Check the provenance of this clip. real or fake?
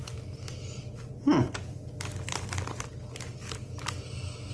real